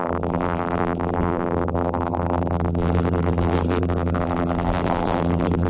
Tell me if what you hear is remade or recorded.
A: remade